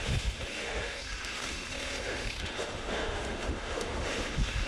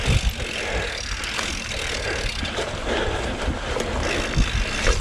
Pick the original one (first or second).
second